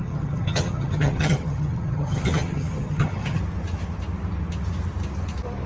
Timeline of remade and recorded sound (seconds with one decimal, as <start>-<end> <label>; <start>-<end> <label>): 0.0-3.4 remade; 3.4-5.7 recorded